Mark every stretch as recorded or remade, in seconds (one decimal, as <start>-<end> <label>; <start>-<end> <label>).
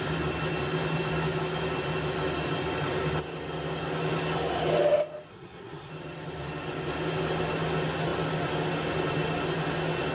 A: 0.0-5.3 recorded; 5.3-5.9 remade; 5.9-10.1 recorded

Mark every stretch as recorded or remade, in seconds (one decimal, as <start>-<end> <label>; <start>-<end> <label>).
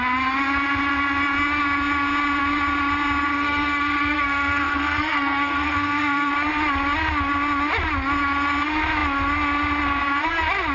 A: 0.0-3.3 recorded; 3.3-6.3 remade; 6.3-10.7 recorded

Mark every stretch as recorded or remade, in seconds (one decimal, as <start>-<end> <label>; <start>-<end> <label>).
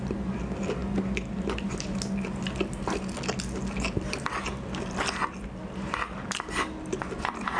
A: 0.0-7.6 recorded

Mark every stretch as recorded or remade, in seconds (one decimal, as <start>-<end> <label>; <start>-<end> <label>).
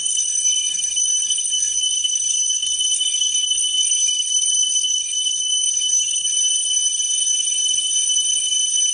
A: 0.0-6.3 remade; 6.3-8.9 recorded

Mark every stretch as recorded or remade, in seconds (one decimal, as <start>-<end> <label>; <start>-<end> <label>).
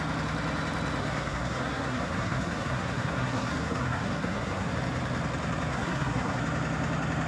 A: 0.0-1.0 recorded; 1.0-4.7 remade; 4.7-5.7 recorded; 5.7-6.4 remade; 6.4-7.3 recorded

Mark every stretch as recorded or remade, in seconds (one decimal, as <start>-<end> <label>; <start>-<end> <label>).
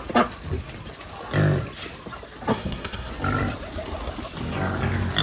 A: 0.0-2.5 recorded; 2.5-3.1 remade; 3.1-5.2 recorded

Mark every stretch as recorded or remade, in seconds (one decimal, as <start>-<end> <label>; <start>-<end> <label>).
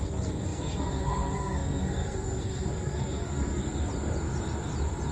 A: 0.0-3.6 remade; 3.6-5.1 recorded